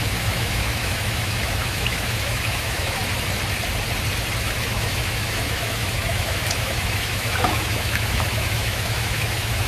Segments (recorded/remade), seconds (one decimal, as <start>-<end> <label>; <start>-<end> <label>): 0.0-3.0 remade; 3.0-4.4 recorded; 4.4-9.7 remade